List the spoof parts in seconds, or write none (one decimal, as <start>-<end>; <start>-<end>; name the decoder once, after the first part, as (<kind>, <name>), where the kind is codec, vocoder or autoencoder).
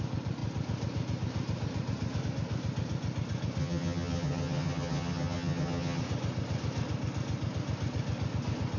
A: 3.6-6.0 (vocoder, HiFi-GAN)